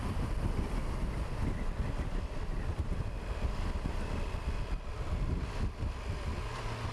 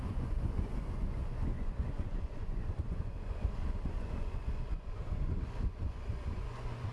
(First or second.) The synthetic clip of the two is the second